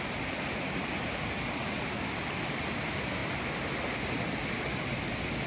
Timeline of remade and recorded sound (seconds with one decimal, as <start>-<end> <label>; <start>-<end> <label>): 0.0-3.2 remade; 3.2-5.1 recorded; 5.1-5.5 remade